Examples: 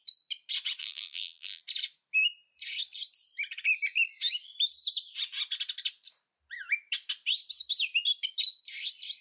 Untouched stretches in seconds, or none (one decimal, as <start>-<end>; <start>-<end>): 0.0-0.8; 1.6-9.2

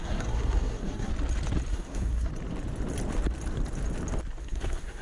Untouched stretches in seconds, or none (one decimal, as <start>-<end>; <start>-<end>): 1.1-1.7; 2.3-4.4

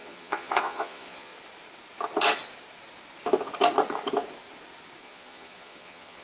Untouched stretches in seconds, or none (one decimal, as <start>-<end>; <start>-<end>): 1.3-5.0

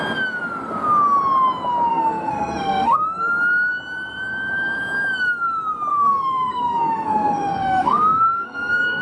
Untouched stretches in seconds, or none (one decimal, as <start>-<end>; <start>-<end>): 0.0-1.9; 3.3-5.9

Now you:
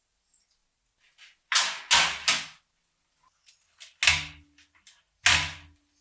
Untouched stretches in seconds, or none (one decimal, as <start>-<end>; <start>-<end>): 0.0-6.0

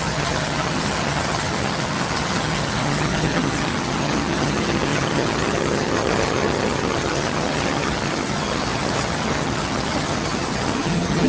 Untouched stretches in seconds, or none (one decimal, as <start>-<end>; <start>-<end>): none